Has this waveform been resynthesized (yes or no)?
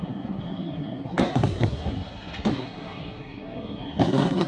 yes